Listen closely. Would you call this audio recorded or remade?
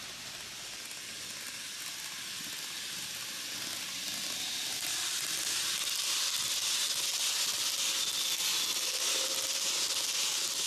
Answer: recorded